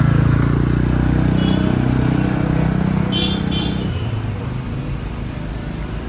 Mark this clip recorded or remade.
recorded